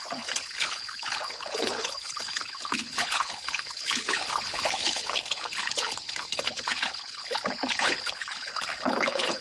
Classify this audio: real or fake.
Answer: fake